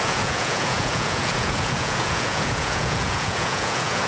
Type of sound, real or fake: fake